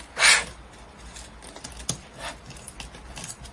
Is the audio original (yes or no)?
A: yes